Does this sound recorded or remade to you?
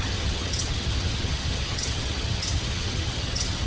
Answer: remade